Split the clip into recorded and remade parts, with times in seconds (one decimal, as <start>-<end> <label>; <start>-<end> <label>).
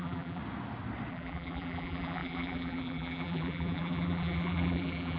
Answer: 0.0-0.4 remade; 0.4-1.1 recorded; 1.1-5.2 remade